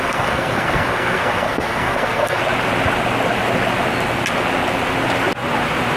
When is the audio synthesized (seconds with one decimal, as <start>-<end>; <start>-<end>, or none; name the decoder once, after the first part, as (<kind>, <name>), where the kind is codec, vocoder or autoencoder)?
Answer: 0.0-2.4 (codec, SNAC)